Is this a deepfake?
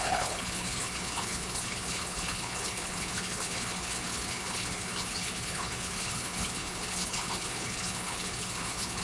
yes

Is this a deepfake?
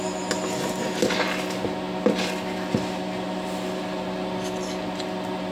no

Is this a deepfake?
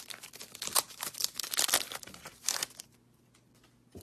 no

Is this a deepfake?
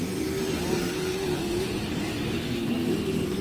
no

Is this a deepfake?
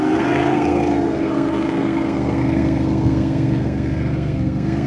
yes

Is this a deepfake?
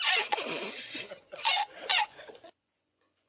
yes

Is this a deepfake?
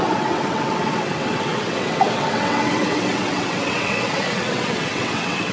yes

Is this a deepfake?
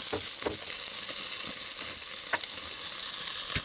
no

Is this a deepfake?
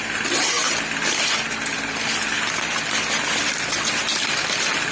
no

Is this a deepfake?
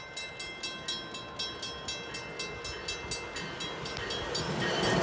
no